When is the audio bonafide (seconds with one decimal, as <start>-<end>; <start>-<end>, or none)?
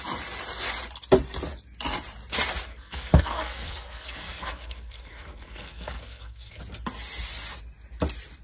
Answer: 0.0-2.7; 6.6-8.4